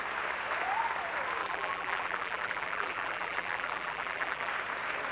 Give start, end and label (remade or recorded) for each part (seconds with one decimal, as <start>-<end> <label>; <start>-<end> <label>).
0.0-1.4 recorded; 1.4-4.5 remade; 4.5-5.1 recorded